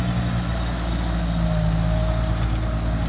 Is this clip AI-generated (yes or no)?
no